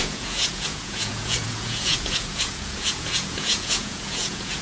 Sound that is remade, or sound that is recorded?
remade